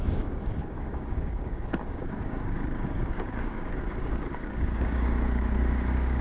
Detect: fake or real fake